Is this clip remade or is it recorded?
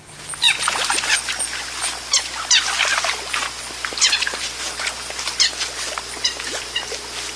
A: recorded